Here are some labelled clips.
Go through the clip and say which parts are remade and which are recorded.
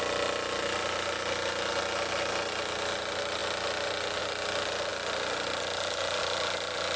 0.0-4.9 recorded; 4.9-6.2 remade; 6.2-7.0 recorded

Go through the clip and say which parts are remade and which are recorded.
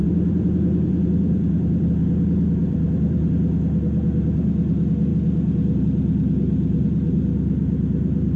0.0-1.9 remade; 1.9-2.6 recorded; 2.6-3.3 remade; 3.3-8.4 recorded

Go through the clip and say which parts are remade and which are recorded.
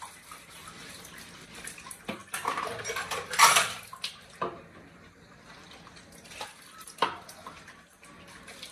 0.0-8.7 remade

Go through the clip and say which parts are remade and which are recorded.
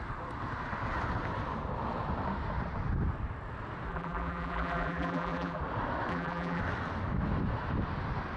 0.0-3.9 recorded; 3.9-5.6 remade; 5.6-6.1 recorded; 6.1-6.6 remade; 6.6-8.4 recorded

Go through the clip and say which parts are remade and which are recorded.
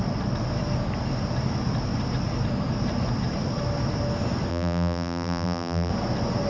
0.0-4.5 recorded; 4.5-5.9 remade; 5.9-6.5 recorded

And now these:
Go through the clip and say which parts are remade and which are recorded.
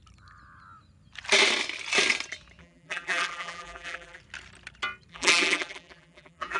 0.0-2.6 recorded; 2.6-4.2 remade; 4.2-5.1 recorded; 5.1-6.6 remade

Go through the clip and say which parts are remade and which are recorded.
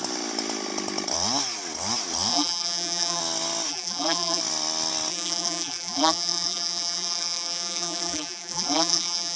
0.0-2.3 recorded; 2.3-3.2 remade; 3.2-3.7 recorded; 3.7-4.4 remade; 4.4-5.1 recorded; 5.1-9.4 remade